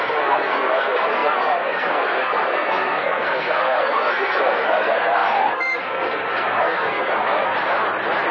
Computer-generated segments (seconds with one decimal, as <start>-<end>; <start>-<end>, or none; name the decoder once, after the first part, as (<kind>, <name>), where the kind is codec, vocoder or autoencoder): 0.0-7.5 (codec, SNAC)